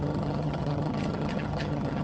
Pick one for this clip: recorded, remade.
remade